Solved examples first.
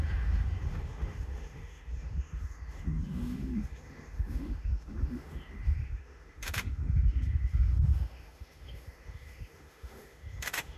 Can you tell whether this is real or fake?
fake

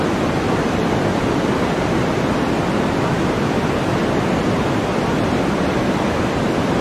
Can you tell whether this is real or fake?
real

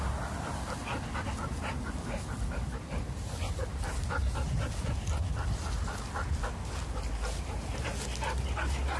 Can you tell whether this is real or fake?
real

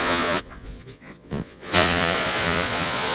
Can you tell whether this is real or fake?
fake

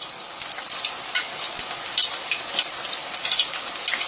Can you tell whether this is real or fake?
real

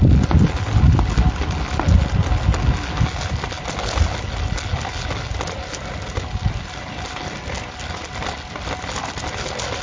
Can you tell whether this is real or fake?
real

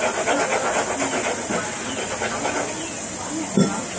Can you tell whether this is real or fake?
real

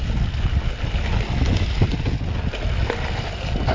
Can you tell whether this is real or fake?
real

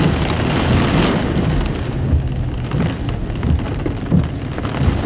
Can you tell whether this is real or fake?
real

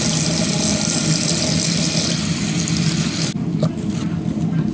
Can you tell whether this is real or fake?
real